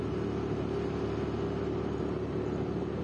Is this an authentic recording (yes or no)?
yes